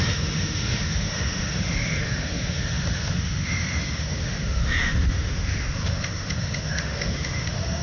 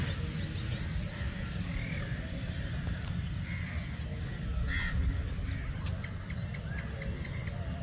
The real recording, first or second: second